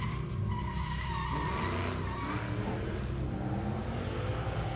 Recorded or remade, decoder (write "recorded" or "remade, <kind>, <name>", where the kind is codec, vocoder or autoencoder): recorded